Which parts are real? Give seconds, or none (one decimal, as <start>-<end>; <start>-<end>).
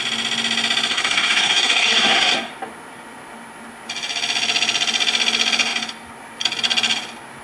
0.0-0.9; 2.5-7.4